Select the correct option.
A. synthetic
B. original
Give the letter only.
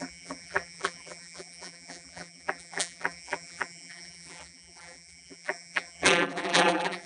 A